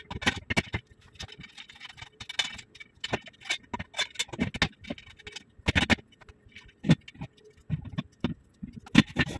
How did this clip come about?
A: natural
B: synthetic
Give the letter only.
A